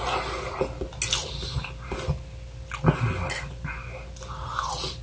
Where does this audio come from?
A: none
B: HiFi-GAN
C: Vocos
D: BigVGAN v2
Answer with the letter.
A